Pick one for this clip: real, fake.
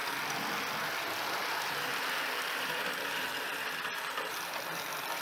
real